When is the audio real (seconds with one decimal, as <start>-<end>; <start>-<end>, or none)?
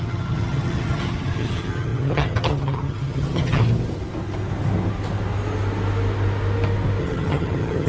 3.6-7.0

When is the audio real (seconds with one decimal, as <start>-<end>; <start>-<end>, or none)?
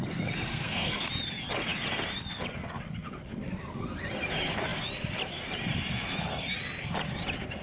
0.0-0.5; 1.1-7.6